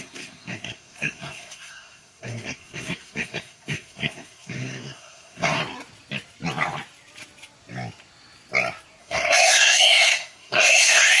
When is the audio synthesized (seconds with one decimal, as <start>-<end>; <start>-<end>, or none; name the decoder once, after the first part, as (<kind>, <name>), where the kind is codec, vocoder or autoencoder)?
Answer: 0.0-5.6 (codec, SNAC); 9.0-11.2